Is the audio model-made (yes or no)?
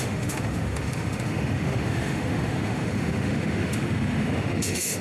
yes